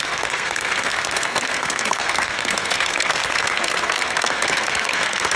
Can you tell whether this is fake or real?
fake